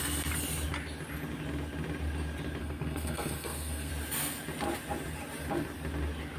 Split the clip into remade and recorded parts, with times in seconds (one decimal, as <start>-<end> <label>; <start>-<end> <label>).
0.0-2.6 recorded; 2.6-3.9 remade; 3.9-6.4 recorded